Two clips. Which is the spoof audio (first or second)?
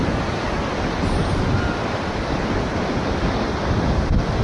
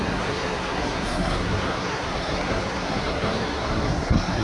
second